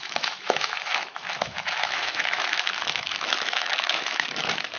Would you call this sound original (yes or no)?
no